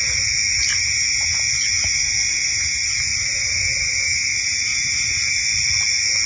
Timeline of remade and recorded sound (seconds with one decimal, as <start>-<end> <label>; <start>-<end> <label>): 0.0-6.3 recorded

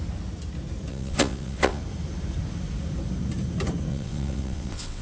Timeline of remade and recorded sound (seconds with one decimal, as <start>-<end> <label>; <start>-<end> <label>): 0.0-0.9 recorded; 0.9-1.8 remade; 1.8-3.9 recorded; 3.9-5.0 remade

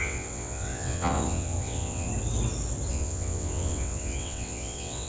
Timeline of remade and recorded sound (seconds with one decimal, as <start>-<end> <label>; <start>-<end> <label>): 0.0-2.1 remade; 2.1-2.9 recorded; 2.9-5.1 remade

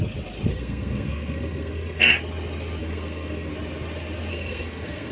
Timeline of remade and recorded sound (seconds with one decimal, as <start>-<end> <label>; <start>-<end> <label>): 0.0-0.5 recorded; 0.5-2.1 remade; 2.1-2.8 recorded; 2.8-3.5 remade; 3.5-4.3 recorded; 4.3-5.1 remade